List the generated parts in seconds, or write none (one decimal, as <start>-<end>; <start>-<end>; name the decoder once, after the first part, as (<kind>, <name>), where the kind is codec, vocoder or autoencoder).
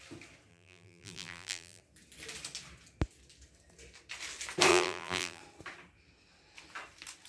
0.5-1.8 (vocoder, BigVGAN v2); 4.7-5.4